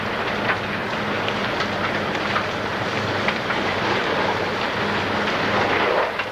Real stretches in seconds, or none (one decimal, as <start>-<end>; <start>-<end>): 0.0-0.8; 4.6-6.3